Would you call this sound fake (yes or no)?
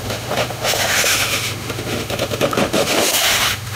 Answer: yes